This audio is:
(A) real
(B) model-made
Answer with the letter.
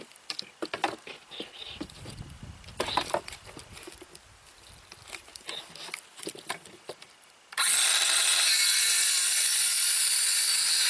A